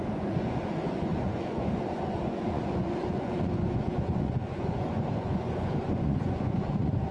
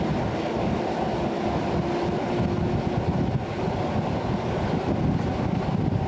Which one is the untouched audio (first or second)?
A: second